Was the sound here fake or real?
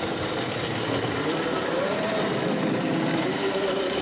fake